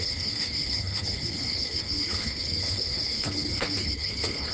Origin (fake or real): fake